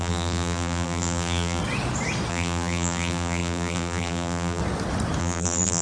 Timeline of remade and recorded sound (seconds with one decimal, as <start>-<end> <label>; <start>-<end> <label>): 0.0-1.6 remade; 1.6-2.3 recorded; 2.3-4.6 remade; 4.6-5.2 recorded; 5.2-5.8 remade